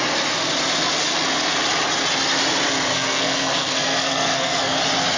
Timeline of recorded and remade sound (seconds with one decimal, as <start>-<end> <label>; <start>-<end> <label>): 0.0-2.9 recorded; 2.9-4.8 remade; 4.8-5.2 recorded